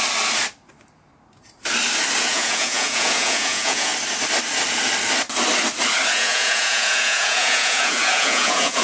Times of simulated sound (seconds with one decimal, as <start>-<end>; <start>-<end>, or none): 2.2-3.9; 6.1-8.8